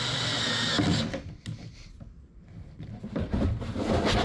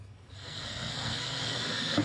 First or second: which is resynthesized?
second